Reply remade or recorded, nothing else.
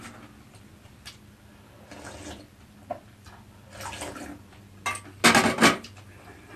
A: recorded